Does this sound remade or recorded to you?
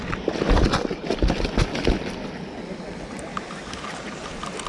recorded